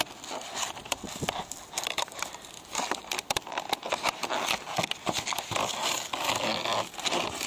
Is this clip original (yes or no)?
yes